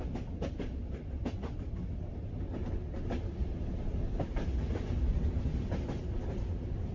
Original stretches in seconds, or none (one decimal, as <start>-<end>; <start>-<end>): 0.0-6.9